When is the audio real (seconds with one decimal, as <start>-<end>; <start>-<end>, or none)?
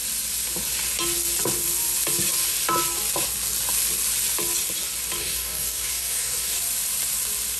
0.0-5.2; 6.6-7.6